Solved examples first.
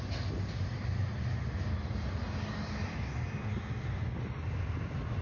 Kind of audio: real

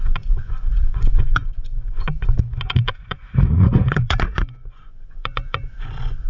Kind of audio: fake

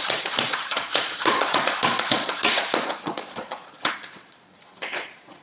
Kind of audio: fake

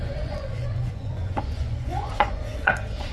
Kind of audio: fake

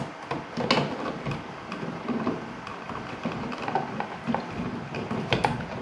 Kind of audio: real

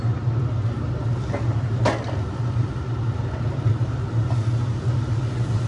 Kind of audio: real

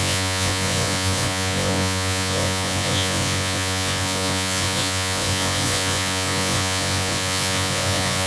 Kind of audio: fake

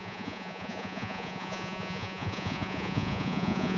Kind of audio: fake